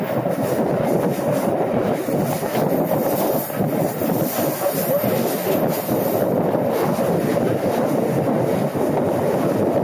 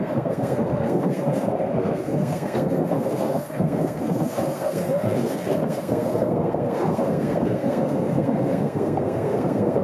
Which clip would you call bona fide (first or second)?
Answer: first